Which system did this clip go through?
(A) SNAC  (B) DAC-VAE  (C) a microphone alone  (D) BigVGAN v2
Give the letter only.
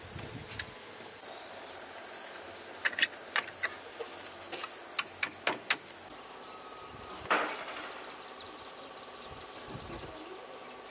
C